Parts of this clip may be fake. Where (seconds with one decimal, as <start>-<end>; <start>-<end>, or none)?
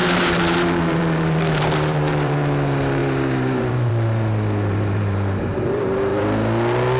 0.0-6.1